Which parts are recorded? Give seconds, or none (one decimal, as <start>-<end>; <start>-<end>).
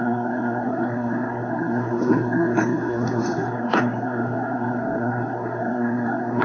none